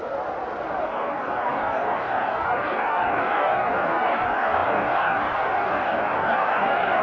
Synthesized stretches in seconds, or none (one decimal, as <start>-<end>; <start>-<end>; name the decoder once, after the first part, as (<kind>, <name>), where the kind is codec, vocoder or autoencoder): 0.8-7.0 (codec, DAC)